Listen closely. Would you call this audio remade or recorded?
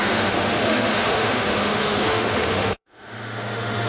remade